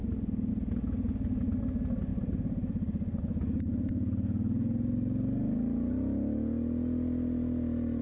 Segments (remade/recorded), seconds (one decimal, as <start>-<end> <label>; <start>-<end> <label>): 0.0-2.1 recorded; 2.1-3.2 remade; 3.2-8.0 recorded